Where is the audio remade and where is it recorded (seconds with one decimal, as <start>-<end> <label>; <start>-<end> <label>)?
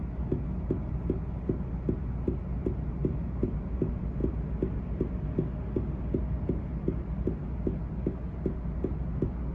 0.0-9.5 recorded